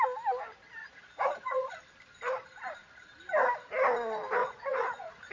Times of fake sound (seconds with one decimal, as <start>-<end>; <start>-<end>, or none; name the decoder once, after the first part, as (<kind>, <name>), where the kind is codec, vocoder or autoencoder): 0.8-1.8 (vocoder, Vocos); 4.4-5.3